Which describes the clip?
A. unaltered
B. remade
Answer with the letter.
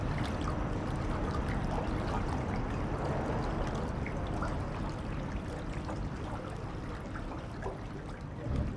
A